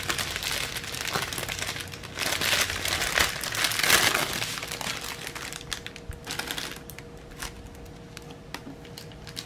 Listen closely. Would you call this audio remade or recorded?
recorded